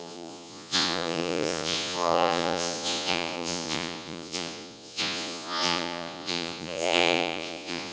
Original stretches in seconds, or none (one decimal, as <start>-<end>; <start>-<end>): none